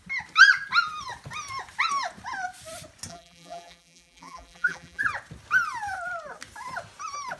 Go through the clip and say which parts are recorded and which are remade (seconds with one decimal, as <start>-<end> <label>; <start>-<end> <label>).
0.0-3.1 recorded; 3.1-5.0 remade; 5.0-7.4 recorded